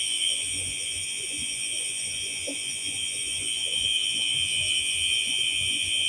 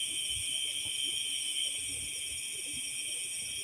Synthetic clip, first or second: first